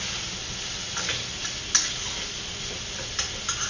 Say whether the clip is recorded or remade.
recorded